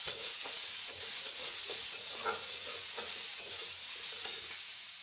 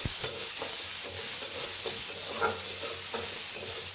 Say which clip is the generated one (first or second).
first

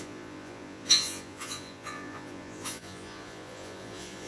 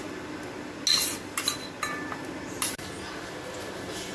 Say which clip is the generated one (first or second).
first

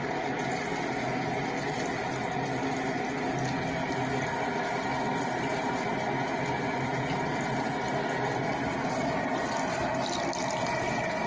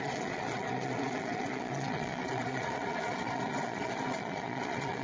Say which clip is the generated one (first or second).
second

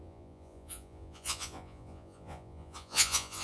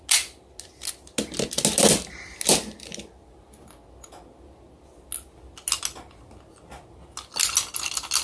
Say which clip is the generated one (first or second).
first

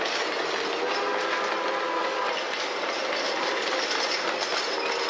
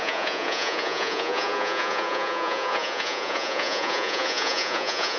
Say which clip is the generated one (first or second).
second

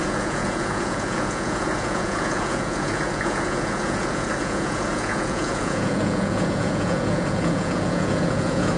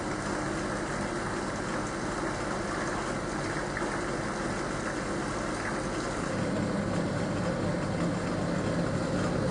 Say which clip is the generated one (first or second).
first